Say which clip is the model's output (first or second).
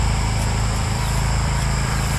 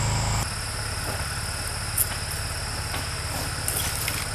first